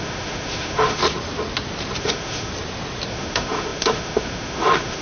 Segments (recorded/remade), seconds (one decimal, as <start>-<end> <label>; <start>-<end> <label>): 0.0-1.0 remade; 1.0-2.0 recorded; 2.0-2.5 remade; 2.5-3.1 recorded; 3.1-5.0 remade